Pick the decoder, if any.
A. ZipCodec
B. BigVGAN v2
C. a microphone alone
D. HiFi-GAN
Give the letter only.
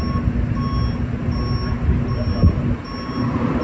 C